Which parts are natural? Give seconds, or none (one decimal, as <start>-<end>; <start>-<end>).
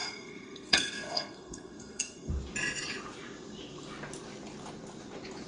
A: 2.3-5.5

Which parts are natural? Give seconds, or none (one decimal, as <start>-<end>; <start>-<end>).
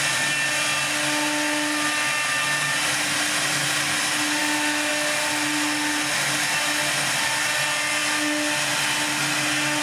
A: 0.0-9.8